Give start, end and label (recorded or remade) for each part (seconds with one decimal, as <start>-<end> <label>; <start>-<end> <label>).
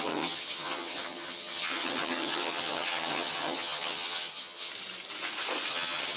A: 0.0-4.7 remade; 4.7-5.7 recorded; 5.7-6.2 remade